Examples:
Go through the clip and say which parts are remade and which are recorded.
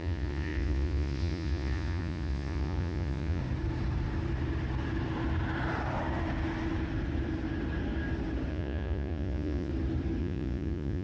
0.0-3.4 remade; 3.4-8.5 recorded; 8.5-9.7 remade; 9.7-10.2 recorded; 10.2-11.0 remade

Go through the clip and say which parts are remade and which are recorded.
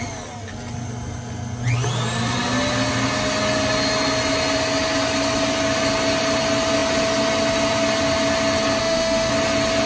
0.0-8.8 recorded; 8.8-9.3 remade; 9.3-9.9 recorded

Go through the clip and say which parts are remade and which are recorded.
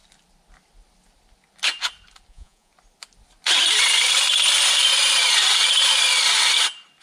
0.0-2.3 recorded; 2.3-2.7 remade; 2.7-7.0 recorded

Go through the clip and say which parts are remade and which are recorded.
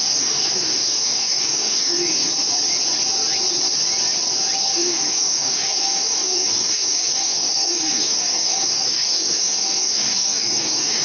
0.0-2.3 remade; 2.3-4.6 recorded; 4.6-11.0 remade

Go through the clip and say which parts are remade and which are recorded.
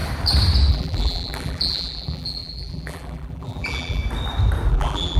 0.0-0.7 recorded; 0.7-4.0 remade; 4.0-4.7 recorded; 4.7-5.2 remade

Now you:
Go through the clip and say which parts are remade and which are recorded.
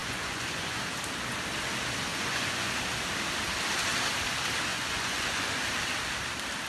0.0-0.8 remade; 0.8-2.1 recorded; 2.1-2.7 remade; 2.7-4.7 recorded; 4.7-5.6 remade; 5.6-6.7 recorded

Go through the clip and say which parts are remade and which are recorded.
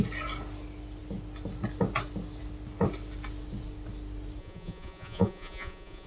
0.0-4.4 recorded; 4.4-6.1 remade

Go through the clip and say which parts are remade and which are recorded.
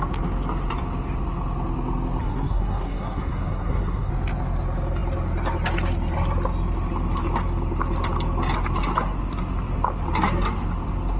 0.0-2.2 recorded; 2.2-4.1 remade; 4.1-11.2 recorded